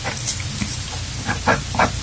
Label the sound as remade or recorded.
recorded